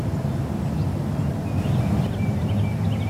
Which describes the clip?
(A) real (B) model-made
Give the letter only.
A